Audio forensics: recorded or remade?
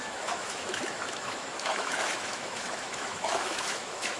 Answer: remade